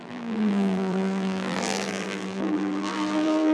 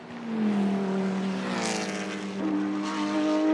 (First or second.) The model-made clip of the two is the first